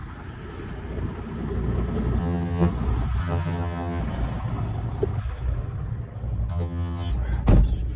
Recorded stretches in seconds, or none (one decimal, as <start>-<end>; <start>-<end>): 0.0-2.2; 2.7-3.2; 4.0-6.5; 7.1-8.0